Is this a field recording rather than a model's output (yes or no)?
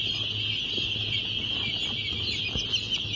yes